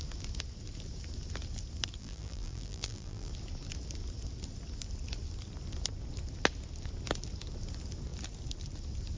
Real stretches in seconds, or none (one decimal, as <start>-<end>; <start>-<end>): 0.0-2.0; 3.3-9.2